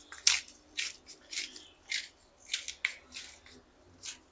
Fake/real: real